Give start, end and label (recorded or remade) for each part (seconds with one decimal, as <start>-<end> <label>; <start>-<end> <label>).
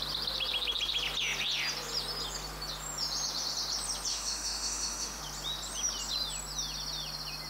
0.0-4.1 recorded; 4.1-5.2 remade; 5.2-7.5 recorded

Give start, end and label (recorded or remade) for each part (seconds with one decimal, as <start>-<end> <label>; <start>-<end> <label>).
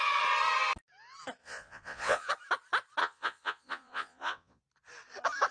0.0-1.4 recorded; 1.4-2.3 remade; 2.3-3.0 recorded; 3.0-4.6 remade; 4.6-5.5 recorded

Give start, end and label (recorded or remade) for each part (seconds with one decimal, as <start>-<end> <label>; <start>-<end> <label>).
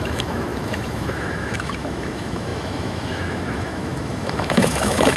0.0-5.2 remade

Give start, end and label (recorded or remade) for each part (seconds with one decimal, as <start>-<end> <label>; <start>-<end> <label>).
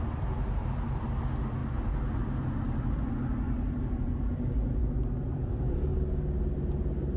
0.0-4.8 recorded; 4.8-5.5 remade; 5.5-7.2 recorded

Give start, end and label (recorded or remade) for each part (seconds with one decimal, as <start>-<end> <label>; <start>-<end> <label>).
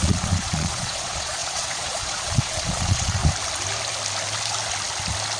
0.0-3.2 remade; 3.2-5.4 recorded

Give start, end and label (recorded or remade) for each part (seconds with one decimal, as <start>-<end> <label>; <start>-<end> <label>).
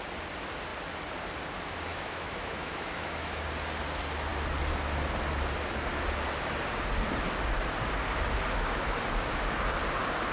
0.0-1.9 recorded; 1.9-3.4 remade; 3.4-10.3 recorded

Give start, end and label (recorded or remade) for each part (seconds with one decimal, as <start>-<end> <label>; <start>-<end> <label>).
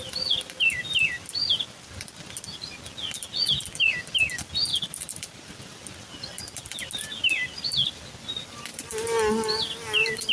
0.0-4.7 recorded; 4.7-5.4 remade; 5.4-10.3 recorded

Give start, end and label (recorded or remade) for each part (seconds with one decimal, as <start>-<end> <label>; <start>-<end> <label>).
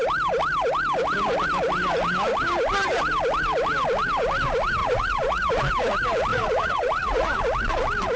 0.0-4.8 recorded; 4.8-5.5 remade; 5.5-6.3 recorded; 6.3-7.4 remade; 7.4-8.2 recorded